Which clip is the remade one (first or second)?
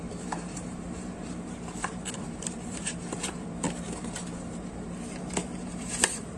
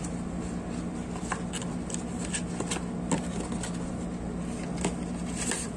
first